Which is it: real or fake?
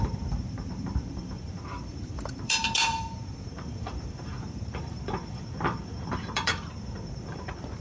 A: fake